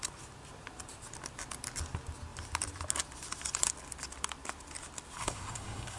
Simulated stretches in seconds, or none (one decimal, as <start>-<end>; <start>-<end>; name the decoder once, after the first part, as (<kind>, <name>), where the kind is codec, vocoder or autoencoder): 5.2-6.0 (codec, SNAC)